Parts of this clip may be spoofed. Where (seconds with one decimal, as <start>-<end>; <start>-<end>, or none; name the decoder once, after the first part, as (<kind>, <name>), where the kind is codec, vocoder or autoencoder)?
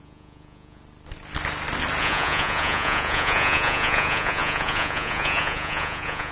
0.0-0.8 (vocoder, Vocos); 2.0-6.3